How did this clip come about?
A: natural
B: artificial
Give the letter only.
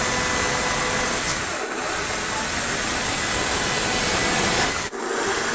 A